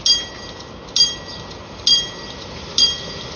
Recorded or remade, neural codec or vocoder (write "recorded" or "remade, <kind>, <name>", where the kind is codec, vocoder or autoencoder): recorded